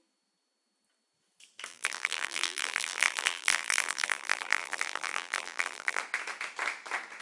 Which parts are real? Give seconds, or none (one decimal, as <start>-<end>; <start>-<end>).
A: 0.0-1.7; 6.0-7.2